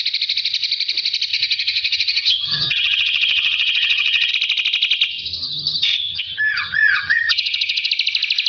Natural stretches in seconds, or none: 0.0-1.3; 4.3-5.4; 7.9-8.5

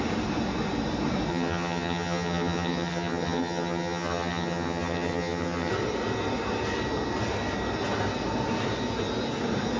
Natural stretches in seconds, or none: 0.0-1.3; 5.7-9.8